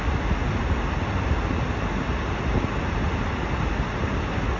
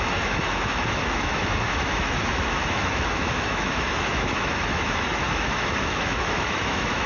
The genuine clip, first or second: first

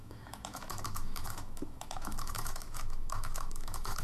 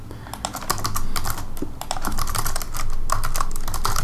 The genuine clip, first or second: second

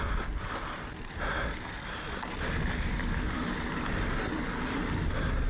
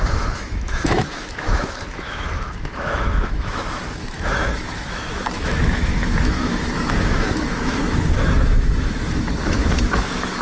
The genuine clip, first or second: first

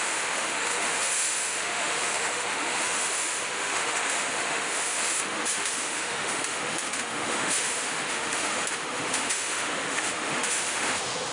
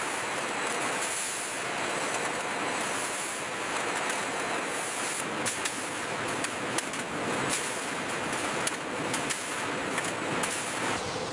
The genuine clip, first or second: second